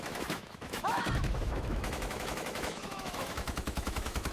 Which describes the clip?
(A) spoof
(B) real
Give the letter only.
A